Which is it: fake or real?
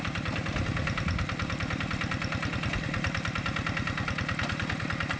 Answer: real